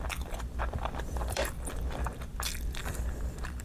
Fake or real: fake